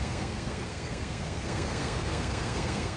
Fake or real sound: fake